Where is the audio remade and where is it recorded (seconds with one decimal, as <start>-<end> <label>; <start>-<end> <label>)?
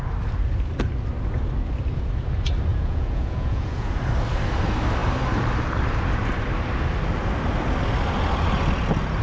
0.0-2.7 recorded; 2.7-3.9 remade; 3.9-9.2 recorded